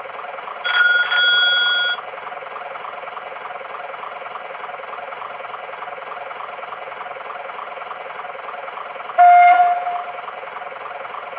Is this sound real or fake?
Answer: real